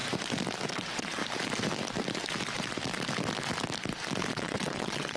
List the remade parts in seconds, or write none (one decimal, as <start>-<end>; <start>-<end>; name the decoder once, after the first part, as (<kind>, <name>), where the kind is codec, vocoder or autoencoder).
0.7-1.2 (vocoder, WaveNeXt); 4.3-5.2